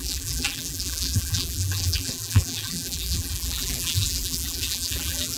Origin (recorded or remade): remade